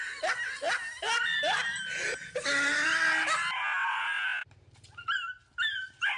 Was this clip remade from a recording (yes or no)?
no